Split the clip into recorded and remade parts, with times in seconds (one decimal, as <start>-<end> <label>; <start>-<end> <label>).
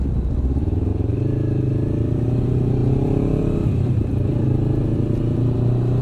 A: 0.0-0.9 recorded; 0.9-1.7 remade; 1.7-2.8 recorded; 2.8-4.3 remade; 4.3-6.0 recorded